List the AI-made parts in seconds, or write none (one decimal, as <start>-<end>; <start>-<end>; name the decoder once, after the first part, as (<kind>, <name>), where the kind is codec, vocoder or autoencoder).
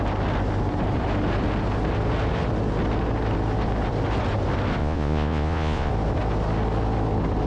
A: 4.8-5.9 (vocoder, Vocos)